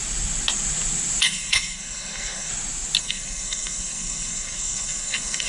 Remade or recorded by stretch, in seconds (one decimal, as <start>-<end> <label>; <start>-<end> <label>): 0.0-1.2 recorded; 1.2-2.5 remade; 2.5-3.0 recorded; 3.0-5.5 remade